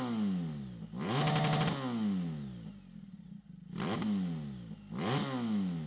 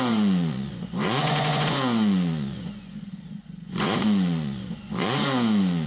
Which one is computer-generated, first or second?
second